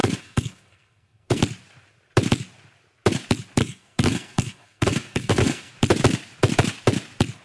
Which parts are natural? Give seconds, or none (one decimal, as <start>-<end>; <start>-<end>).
1.4-3.6; 5.7-7.4